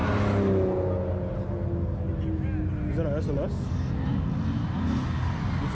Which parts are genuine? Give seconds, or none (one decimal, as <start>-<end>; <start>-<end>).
0.0-5.7